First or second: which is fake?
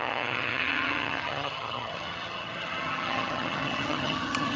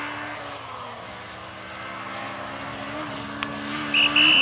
first